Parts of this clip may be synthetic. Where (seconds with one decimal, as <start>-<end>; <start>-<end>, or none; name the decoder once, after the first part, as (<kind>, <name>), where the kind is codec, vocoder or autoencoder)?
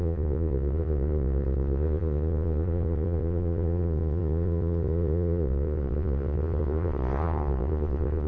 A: 0.0-8.3 (vocoder, Vocos)